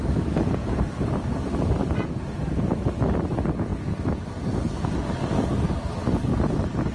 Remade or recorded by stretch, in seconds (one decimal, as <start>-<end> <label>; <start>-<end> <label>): 0.0-0.6 recorded; 0.6-3.0 remade; 3.0-6.3 recorded; 6.3-6.9 remade